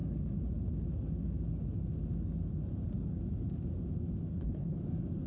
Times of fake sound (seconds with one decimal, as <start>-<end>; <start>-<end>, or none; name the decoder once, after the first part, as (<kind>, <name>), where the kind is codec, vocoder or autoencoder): 4.3-4.8 (codec, HILCodec)